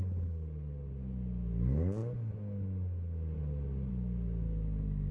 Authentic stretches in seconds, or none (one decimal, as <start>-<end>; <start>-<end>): 0.0-5.1